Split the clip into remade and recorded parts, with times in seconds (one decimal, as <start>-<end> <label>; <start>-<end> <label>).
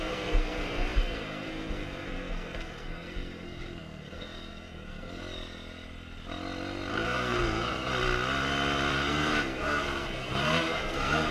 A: 0.0-5.2 remade; 5.2-6.9 recorded; 6.9-7.9 remade; 7.9-8.9 recorded; 8.9-11.3 remade